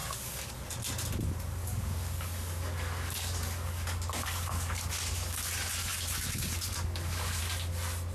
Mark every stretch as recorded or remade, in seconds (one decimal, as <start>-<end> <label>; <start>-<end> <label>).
0.0-0.5 remade; 0.5-1.6 recorded; 1.6-5.5 remade; 5.5-5.9 recorded; 5.9-7.4 remade; 7.4-8.1 recorded